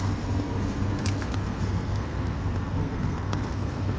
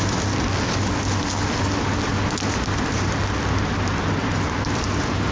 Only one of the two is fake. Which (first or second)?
first